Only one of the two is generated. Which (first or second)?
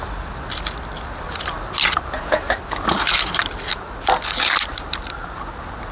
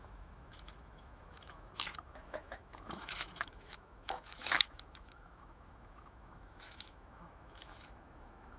second